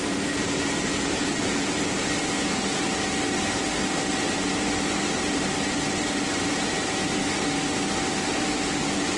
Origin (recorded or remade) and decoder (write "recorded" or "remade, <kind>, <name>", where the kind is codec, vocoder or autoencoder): recorded